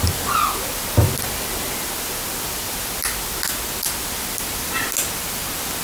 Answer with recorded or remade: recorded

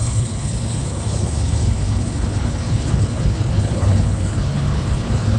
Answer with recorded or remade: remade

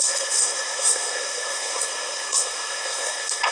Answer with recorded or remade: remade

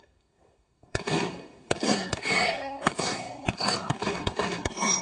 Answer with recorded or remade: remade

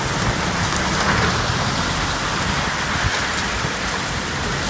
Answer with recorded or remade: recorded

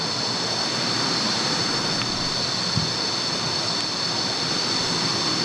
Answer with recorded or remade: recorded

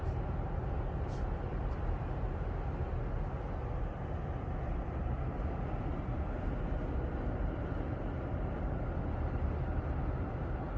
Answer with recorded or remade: recorded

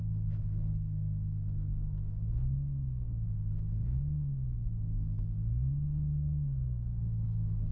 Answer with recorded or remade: remade